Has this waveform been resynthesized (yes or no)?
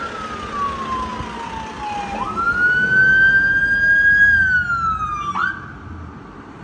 no